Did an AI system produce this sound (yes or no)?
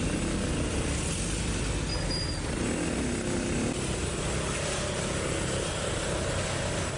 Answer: no